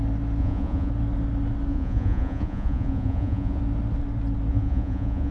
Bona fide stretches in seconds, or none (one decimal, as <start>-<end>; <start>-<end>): 0.0-0.4; 0.9-1.7; 3.6-4.5